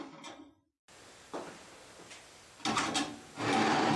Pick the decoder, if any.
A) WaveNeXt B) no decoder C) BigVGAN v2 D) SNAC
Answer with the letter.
B